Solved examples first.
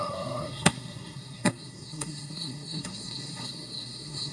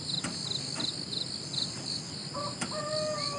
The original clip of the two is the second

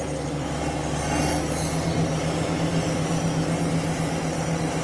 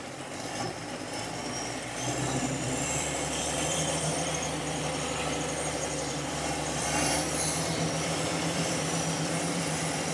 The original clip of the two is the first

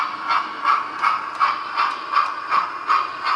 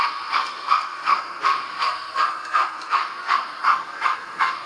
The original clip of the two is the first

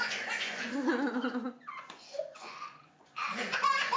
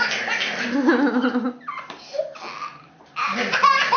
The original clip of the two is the second